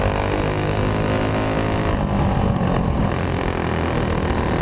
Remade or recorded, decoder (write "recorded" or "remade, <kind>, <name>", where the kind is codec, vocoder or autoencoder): recorded